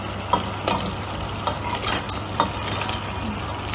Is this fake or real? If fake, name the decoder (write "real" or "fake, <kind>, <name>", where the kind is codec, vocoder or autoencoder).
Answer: real